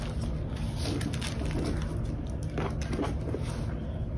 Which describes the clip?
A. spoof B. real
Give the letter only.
B